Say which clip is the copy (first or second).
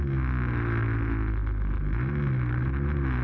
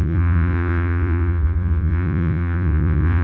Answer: second